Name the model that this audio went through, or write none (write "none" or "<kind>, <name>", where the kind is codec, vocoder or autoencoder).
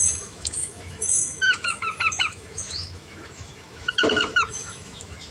autoencoder, DAC-VAE